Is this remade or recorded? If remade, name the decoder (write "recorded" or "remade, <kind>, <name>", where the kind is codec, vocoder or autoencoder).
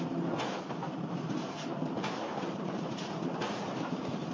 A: remade, vocoder, BigVGAN v2